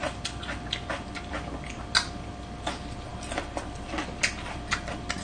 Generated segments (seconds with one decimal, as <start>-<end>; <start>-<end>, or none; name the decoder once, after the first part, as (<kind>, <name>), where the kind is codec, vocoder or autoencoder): none